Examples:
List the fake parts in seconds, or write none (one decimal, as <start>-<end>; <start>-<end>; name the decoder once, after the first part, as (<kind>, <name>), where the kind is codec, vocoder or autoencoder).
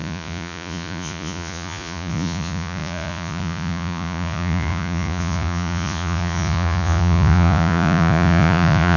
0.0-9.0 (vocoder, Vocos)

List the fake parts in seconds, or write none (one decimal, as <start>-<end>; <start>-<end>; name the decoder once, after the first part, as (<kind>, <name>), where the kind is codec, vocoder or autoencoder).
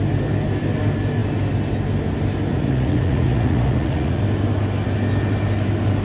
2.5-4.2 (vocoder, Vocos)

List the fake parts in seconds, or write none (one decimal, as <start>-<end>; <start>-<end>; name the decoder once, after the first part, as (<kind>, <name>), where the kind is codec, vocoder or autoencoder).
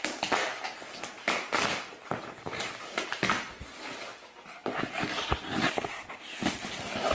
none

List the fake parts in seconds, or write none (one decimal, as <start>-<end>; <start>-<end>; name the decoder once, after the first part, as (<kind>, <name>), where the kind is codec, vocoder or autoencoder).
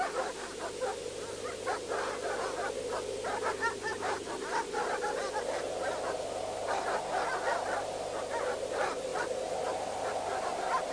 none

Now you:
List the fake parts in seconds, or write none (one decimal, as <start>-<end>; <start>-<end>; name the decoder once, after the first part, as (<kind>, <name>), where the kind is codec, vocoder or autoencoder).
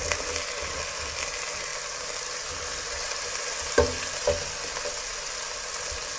none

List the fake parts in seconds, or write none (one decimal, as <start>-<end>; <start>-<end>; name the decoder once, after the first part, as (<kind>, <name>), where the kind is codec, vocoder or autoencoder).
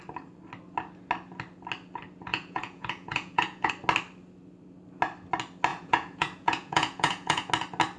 2.3-3.7 (vocoder, Vocos); 5.7-7.5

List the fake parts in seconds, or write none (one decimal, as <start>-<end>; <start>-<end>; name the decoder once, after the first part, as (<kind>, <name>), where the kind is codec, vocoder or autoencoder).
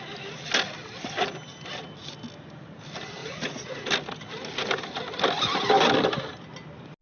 3.2-3.9 (vocoder, Vocos)